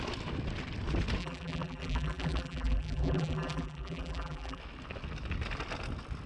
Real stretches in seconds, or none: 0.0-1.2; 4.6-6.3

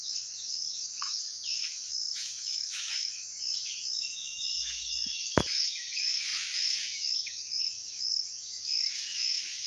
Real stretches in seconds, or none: none

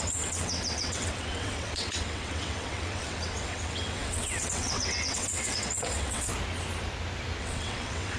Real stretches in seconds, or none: 6.3-7.4

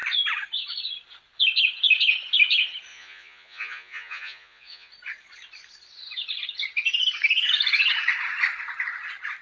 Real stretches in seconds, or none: 0.0-2.9; 4.9-9.4

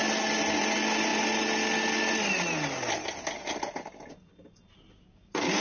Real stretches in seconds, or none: 0.0-5.6

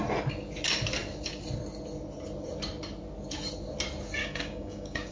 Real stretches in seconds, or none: 0.0-4.2

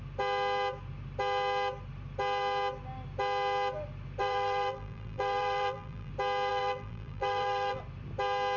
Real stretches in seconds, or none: 0.0-4.2; 6.1-6.5; 7.8-8.6